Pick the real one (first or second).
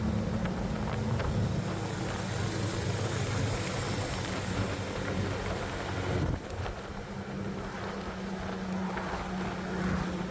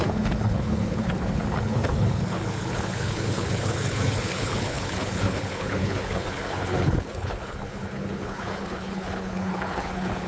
first